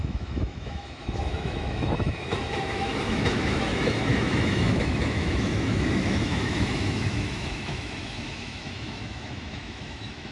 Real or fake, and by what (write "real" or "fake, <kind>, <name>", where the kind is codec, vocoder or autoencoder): fake, autoencoder, DAC-VAE